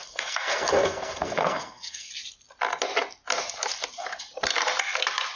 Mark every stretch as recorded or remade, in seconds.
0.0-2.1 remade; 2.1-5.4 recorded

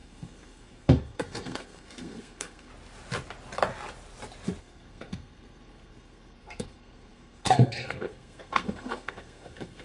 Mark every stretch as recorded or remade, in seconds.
0.0-2.7 remade; 2.7-4.6 recorded; 4.6-9.8 remade

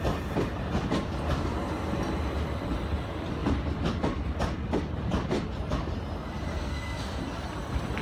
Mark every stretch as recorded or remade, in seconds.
0.0-6.5 recorded; 6.5-7.2 remade; 7.2-8.0 recorded

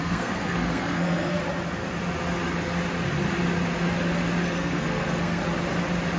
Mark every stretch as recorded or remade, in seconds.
0.0-1.4 remade; 1.4-4.4 recorded; 4.4-5.4 remade; 5.4-6.2 recorded

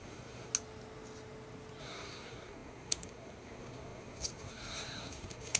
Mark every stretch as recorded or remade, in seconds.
0.0-0.5 remade; 0.5-1.8 recorded; 1.8-5.6 remade

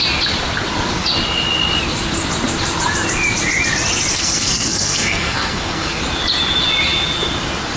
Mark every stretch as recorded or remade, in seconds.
0.0-4.1 recorded; 4.1-6.0 remade; 6.0-7.8 recorded